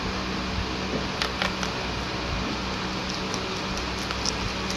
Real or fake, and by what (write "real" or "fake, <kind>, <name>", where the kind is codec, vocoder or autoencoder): real